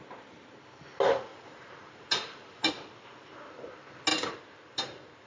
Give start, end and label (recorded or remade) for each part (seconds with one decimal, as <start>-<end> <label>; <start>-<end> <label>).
0.0-1.3 recorded; 1.3-2.7 remade; 2.7-4.1 recorded; 4.1-5.3 remade